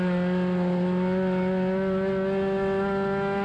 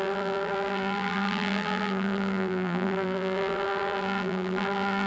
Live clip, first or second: first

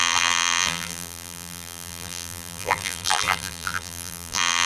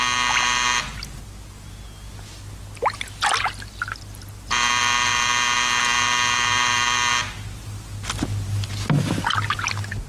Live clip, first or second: second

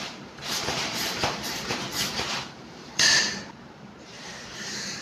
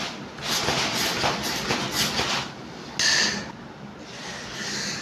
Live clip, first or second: second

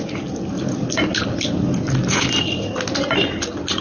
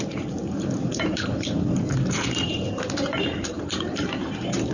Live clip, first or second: first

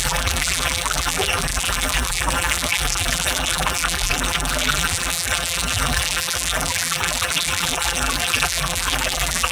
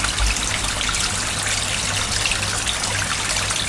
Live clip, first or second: second